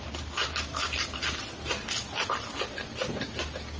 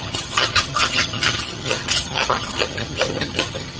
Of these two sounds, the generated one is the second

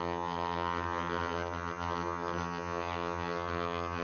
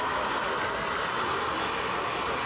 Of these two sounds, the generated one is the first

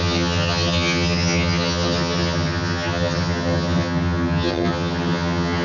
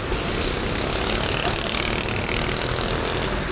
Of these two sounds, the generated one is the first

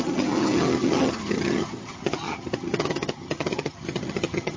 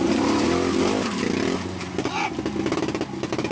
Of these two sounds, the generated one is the first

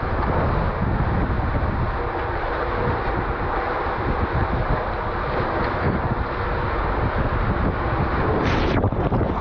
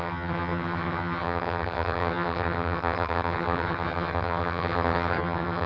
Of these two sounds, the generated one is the second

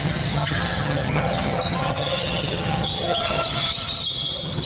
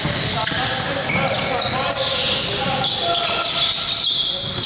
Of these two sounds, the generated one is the first